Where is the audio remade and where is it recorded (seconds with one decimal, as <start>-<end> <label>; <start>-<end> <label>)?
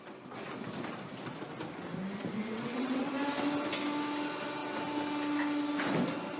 0.0-2.3 recorded; 2.3-3.1 remade; 3.1-6.4 recorded